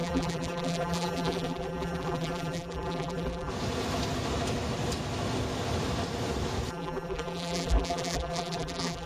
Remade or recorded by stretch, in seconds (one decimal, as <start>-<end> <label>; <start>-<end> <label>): 0.0-3.5 remade; 3.5-6.7 recorded; 6.7-9.1 remade